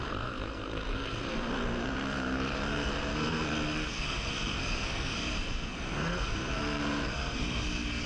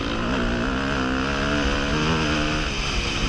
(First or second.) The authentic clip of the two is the second